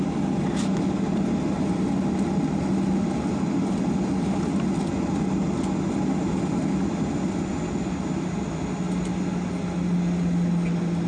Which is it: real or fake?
real